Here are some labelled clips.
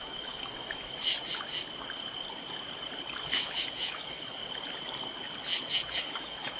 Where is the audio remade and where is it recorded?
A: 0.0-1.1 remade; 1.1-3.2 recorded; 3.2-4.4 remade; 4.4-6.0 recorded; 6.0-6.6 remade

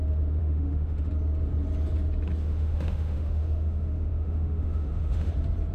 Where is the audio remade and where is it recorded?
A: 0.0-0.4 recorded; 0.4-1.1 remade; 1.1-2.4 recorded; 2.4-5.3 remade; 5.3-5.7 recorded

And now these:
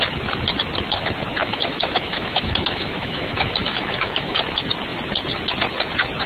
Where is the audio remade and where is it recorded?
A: 0.0-1.4 recorded; 1.4-4.4 remade; 4.4-6.3 recorded

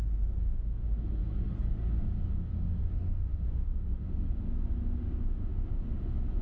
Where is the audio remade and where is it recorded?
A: 0.0-1.2 remade; 1.2-2.0 recorded; 2.0-6.4 remade

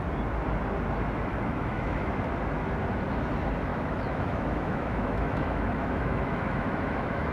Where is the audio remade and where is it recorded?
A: 0.0-1.3 recorded; 1.3-2.1 remade; 2.1-3.7 recorded; 3.7-7.3 remade

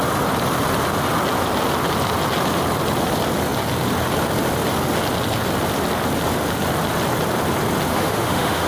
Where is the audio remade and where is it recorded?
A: 0.0-7.9 recorded; 7.9-8.7 remade